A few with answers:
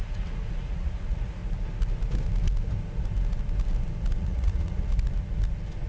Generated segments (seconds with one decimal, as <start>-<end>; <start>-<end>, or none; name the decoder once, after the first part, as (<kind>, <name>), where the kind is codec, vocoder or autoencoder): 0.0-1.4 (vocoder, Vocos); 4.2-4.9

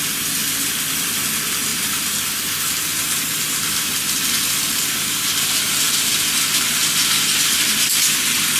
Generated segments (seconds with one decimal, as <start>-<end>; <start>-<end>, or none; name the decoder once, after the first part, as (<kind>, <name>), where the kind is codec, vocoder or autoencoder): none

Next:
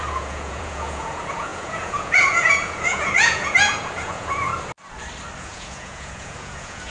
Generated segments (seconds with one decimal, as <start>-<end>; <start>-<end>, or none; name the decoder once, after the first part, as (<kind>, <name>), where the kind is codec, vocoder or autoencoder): 0.0-4.5 (vocoder, Vocos); 5.4-6.9

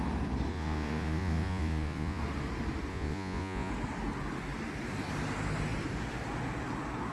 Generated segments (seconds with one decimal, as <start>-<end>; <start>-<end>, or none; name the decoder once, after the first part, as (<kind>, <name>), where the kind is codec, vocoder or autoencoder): 0.5-2.2 (vocoder, Vocos); 2.9-3.7